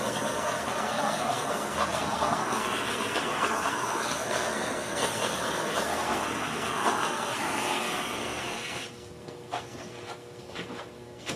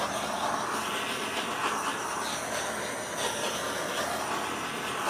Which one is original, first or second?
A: second